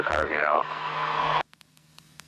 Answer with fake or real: fake